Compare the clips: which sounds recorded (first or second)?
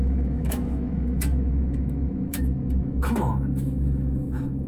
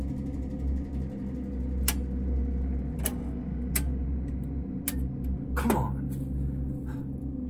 second